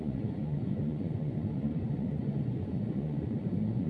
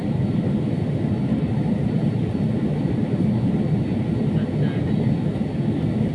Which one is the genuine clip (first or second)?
second